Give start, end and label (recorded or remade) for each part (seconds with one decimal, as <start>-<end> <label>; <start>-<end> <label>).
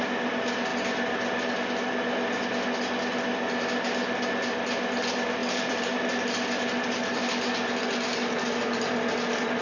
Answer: 0.0-5.4 recorded; 5.4-6.1 remade; 6.1-9.6 recorded